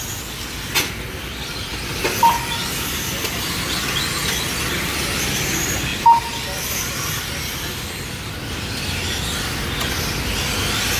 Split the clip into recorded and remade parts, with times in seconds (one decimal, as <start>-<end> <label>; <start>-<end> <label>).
0.0-11.0 recorded